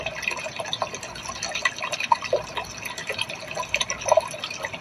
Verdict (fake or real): real